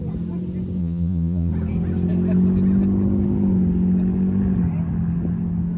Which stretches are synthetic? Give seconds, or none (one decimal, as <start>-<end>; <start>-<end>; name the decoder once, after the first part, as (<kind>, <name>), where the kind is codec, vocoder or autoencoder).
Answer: 0.8-1.5 (vocoder, Vocos)